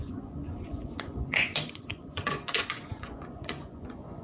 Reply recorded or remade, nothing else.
remade